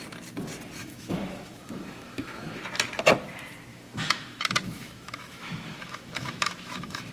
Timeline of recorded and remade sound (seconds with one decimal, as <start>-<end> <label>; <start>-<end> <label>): 0.0-0.8 recorded; 0.8-2.6 remade; 2.6-3.7 recorded; 3.7-7.1 remade